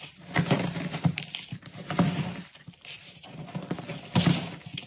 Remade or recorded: recorded